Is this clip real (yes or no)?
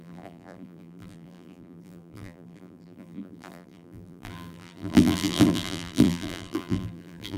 no